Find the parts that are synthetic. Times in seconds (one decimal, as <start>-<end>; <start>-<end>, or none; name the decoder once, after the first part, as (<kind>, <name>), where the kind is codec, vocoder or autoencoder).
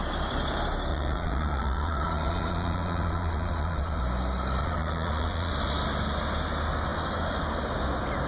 0.9-4.0 (vocoder, Vocos); 4.6-5.5